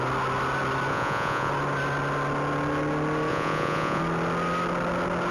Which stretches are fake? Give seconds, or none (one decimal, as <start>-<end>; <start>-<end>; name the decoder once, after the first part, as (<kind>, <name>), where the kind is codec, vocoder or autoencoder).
0.9-1.5 (vocoder, Vocos); 3.3-4.0